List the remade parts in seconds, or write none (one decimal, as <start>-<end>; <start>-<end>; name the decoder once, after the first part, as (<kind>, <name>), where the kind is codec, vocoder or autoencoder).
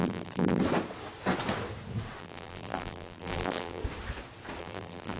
0.0-0.6 (vocoder, BigVGAN v2); 2.2-3.8; 4.6-5.2